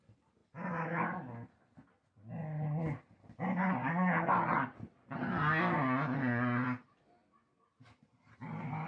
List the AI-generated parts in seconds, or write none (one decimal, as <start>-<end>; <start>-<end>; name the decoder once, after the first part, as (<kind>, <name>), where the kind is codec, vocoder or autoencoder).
3.6-4.2 (vocoder, Vocos)